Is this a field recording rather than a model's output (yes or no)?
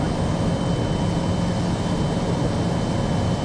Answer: yes